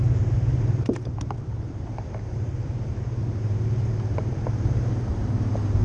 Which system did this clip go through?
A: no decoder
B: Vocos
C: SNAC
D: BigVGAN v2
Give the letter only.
D